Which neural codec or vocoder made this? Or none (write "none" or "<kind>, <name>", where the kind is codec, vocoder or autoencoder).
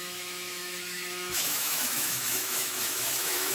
autoencoder, DAC-VAE